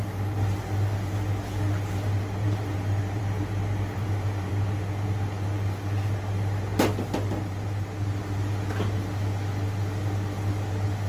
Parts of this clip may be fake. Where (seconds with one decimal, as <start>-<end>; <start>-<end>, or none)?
2.4-3.2; 4.0-4.5